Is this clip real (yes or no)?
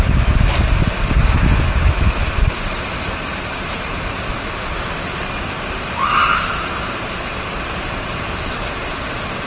yes